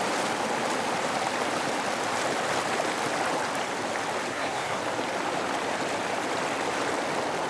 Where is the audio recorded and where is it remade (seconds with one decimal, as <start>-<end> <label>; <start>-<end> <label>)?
0.0-4.3 recorded; 4.3-4.8 remade; 4.8-7.5 recorded